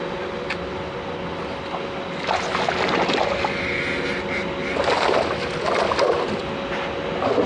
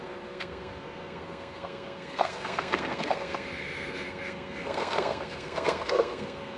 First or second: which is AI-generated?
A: second